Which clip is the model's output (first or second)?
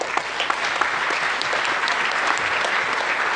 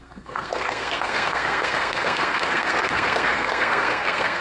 second